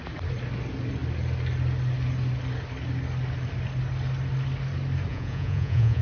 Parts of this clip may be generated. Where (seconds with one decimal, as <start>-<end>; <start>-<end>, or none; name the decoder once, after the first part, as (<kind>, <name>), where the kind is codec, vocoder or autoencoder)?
5.1-6.0 (vocoder, Vocos)